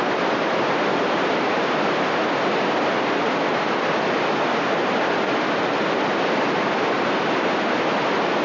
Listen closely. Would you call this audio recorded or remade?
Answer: recorded